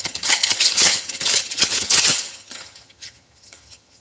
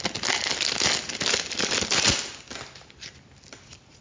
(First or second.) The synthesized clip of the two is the first